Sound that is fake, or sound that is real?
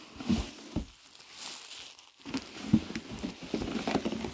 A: real